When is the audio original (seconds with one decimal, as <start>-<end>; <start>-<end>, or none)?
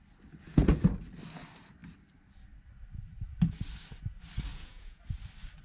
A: 0.0-4.5; 5.0-5.6